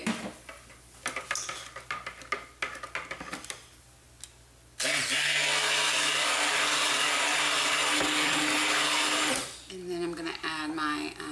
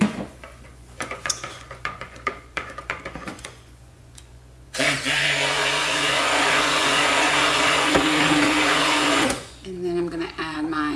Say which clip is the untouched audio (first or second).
first